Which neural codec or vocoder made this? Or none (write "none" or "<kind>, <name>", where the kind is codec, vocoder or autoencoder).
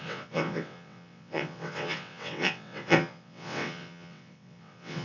vocoder, WaveNeXt